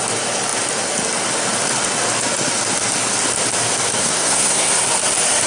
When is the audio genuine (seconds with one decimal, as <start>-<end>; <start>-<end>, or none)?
0.0-4.0; 4.7-5.5